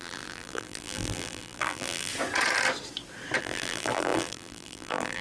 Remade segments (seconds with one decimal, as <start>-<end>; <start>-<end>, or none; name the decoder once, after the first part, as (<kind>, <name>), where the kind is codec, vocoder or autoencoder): 0.0-2.1 (vocoder, BigVGAN v2); 3.4-5.2